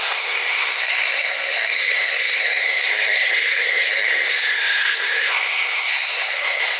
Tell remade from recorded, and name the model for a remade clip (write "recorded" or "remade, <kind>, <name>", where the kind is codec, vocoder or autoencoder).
remade, codec, SNAC